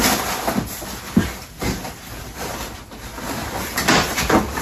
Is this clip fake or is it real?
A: real